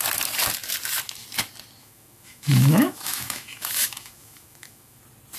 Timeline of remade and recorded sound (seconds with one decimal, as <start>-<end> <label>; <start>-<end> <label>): 0.0-1.8 recorded; 1.8-5.0 remade; 5.0-5.4 recorded